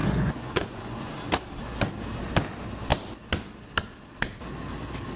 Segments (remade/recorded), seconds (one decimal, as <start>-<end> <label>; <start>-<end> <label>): 0.0-1.1 remade; 1.1-5.2 recorded